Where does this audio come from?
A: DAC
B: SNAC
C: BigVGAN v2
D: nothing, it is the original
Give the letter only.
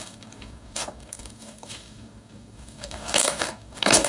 A